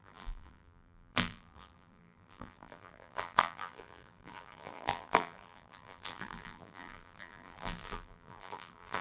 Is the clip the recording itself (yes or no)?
no